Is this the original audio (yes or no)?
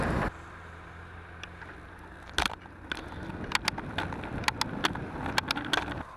yes